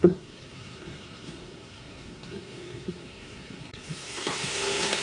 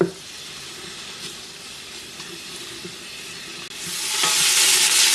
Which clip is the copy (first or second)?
first